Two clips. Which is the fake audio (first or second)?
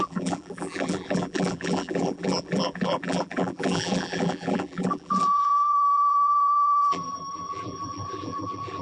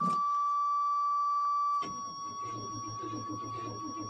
first